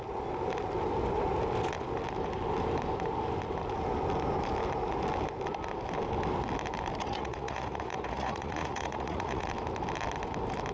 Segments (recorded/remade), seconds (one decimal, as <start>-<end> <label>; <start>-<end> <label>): 0.0-7.0 recorded; 7.0-9.5 remade; 9.5-10.7 recorded